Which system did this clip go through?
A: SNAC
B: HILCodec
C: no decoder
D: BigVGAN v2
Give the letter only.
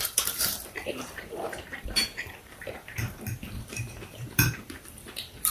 D